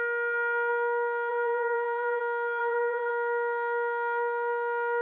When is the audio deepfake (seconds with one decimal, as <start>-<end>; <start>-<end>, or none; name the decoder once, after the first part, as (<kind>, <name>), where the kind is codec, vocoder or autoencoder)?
1.3-2.2 (vocoder, BigVGAN v2); 2.6-3.1